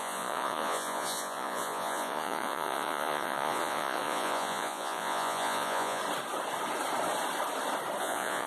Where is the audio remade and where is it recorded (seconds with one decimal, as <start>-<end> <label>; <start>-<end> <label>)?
0.0-6.0 remade; 6.0-8.0 recorded; 8.0-8.5 remade